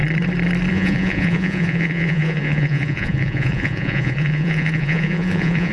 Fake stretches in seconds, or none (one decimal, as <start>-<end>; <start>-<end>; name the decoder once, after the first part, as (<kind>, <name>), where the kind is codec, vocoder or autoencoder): 0.7-5.7 (vocoder, Vocos)